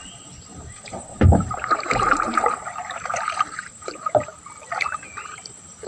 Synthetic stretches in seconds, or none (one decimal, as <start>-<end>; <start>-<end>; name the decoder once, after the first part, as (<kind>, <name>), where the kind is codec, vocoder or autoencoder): 0.5-4.0 (vocoder, BigVGAN v2)